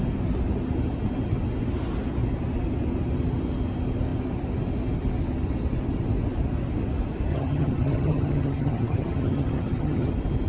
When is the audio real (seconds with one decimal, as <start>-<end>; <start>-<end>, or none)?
0.0-7.3; 10.1-10.5